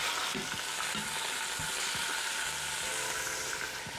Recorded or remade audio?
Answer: recorded